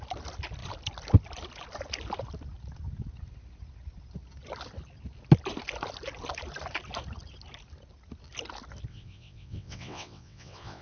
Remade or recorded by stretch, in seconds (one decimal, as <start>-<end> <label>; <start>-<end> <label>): 0.0-8.9 recorded; 8.9-10.8 remade